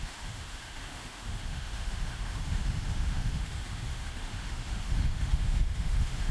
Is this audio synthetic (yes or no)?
yes